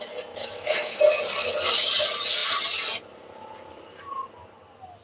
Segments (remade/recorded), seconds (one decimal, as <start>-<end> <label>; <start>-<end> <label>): 0.0-0.4 recorded; 0.4-1.0 remade; 1.0-5.0 recorded